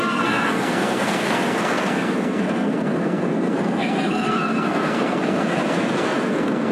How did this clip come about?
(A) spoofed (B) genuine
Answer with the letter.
A